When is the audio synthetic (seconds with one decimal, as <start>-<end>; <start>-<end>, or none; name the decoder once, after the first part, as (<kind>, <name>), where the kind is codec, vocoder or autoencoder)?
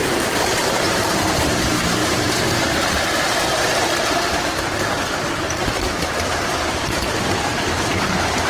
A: 0.0-8.5 (vocoder, BigVGAN v2)